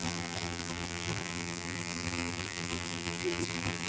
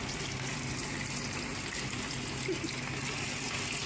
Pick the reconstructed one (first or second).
first